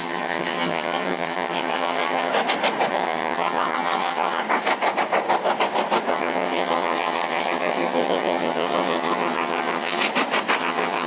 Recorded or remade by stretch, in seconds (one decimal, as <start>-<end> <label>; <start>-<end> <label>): 0.0-2.3 remade; 2.3-2.9 recorded; 2.9-4.4 remade; 4.4-6.1 recorded; 6.1-10.0 remade; 10.0-10.6 recorded; 10.6-11.1 remade